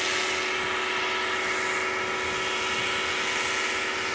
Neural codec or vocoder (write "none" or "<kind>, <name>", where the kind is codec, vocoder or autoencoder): none